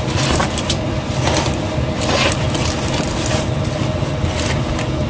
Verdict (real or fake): real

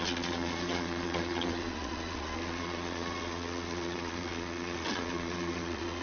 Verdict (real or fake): fake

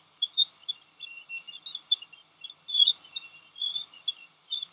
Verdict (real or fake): real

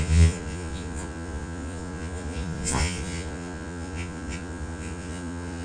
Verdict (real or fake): fake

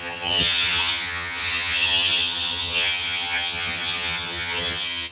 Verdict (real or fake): fake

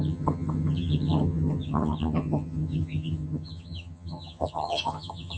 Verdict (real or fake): fake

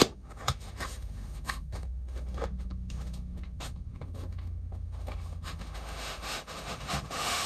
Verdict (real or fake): fake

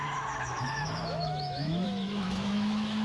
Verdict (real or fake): fake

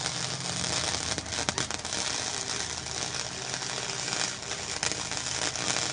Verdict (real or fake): real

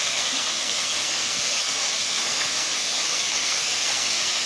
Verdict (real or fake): fake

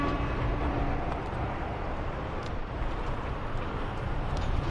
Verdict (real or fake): fake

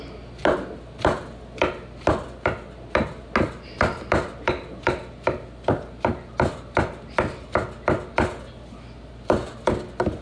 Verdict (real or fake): real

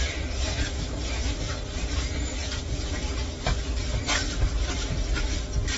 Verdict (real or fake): real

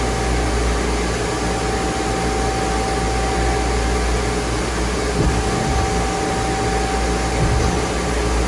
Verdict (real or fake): real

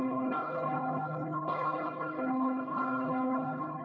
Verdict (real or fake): fake